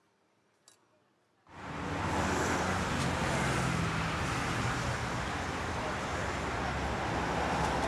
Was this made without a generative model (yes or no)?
yes